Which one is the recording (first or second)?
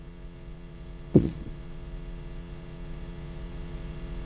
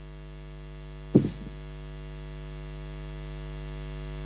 second